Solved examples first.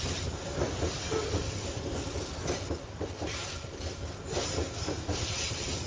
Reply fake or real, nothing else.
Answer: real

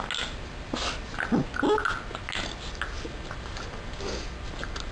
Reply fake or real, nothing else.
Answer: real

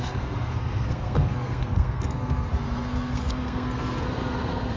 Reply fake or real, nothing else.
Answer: fake